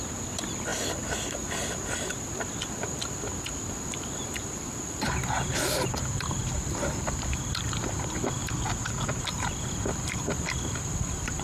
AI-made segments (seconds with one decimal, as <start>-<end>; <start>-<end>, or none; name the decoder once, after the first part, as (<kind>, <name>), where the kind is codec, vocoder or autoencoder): 0.0-8.4 (vocoder, BigVGAN v2); 9.2-11.4